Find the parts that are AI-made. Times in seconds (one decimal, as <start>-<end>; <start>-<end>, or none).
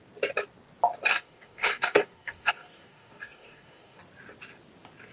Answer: 1.1-4.0